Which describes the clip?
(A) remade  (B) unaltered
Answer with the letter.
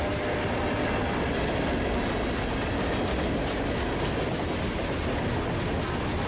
B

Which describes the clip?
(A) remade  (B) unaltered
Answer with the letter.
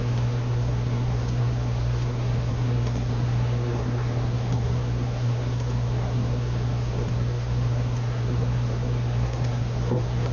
A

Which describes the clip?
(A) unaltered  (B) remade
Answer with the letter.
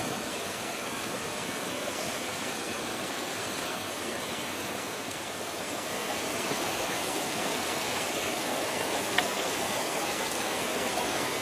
B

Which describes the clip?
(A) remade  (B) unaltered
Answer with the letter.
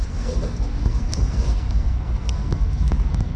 A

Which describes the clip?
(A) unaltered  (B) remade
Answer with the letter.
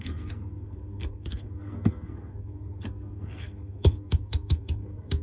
B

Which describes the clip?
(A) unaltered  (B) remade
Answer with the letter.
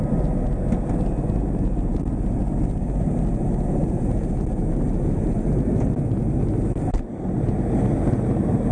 A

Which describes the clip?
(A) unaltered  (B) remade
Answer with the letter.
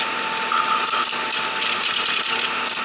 A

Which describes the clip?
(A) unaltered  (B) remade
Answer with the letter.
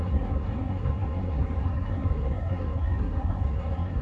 B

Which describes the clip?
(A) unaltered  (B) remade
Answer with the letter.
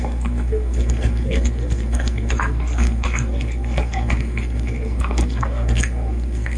B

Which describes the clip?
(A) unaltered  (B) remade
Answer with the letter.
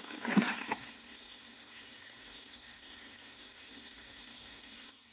B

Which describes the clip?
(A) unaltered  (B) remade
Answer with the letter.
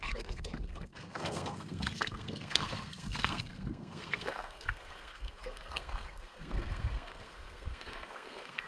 B